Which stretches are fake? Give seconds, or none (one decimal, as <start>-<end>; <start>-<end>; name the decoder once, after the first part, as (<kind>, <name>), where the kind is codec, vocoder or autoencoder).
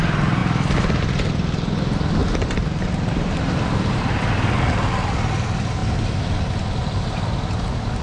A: 2.2-4.2 (vocoder, BigVGAN v2)